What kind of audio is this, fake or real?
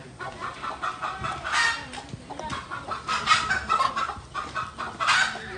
real